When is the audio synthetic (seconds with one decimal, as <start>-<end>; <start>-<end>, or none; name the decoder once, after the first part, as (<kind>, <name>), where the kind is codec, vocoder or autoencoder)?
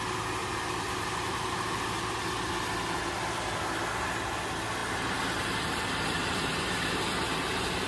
0.4-1.9 (vocoder, BigVGAN v2); 4.8-6.6